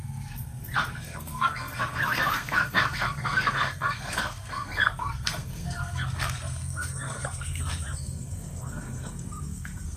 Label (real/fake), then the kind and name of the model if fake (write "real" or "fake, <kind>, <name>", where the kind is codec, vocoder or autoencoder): fake, codec, SNAC